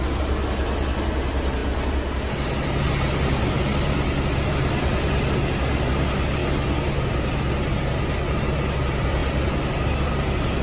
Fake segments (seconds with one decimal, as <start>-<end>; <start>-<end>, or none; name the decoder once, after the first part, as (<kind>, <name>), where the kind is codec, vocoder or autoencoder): none